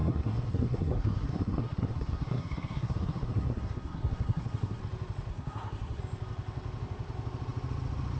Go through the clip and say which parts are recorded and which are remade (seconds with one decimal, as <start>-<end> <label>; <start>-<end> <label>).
0.0-4.8 remade; 4.8-5.3 recorded; 5.3-6.0 remade; 6.0-8.2 recorded